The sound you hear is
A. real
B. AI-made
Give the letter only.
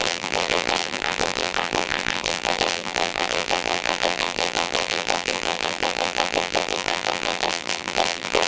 B